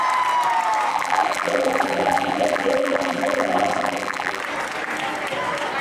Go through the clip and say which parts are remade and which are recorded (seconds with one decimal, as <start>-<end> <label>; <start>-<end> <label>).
0.0-0.9 recorded; 0.9-4.4 remade; 4.4-5.8 recorded